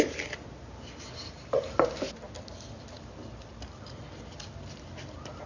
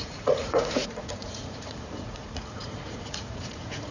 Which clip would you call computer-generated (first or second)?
second